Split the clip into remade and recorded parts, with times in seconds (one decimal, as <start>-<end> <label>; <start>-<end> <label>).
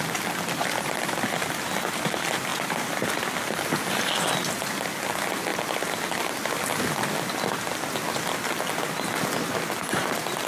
0.0-2.5 recorded; 2.5-3.1 remade; 3.1-10.5 recorded